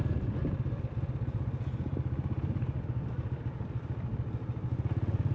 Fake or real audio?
real